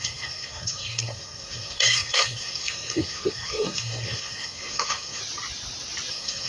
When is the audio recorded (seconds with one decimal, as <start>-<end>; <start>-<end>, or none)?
5.2-6.1